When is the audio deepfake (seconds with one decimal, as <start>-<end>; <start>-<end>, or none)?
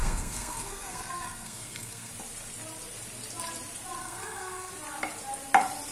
0.0-2.1; 4.0-4.7